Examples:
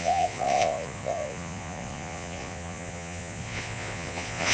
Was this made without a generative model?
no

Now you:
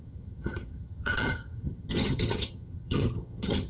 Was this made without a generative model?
no